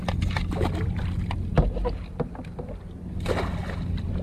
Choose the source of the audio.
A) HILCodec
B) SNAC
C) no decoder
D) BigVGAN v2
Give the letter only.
C